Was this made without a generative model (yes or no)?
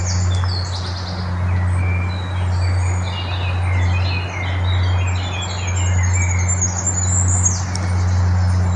yes